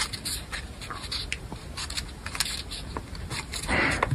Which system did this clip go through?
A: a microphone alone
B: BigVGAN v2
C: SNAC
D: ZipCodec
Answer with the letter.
A